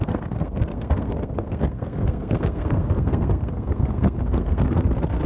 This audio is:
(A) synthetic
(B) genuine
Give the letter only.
A